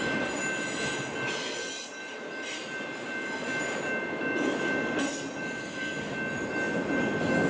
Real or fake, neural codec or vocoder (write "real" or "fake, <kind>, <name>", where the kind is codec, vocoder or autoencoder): real